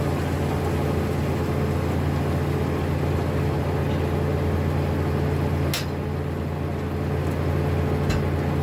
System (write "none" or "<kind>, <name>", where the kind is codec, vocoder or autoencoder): none